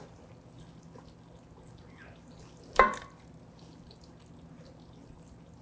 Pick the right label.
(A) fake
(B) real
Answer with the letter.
B